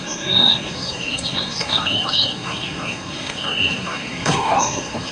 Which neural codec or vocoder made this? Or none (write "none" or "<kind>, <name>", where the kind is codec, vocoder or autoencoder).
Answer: codec, SNAC